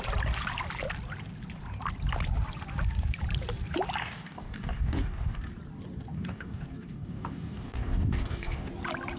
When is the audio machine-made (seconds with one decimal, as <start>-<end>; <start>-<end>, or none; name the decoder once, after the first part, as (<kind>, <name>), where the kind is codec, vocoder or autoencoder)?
4.0-5.4 (codec, DAC); 6.1-8.7